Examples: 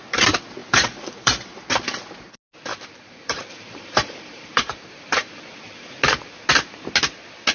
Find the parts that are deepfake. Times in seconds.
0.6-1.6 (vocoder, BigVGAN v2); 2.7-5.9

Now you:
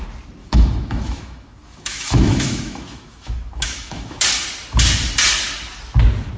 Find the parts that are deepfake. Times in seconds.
0.4-4.2 (autoencoder, DAC-VAE)

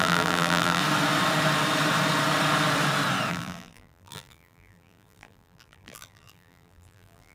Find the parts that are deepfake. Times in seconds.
0.0-0.8 (vocoder, BigVGAN v2); 3.3-7.3

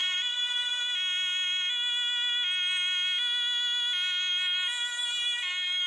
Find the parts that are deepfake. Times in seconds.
0.0-0.8 (vocoder, BigVGAN v2)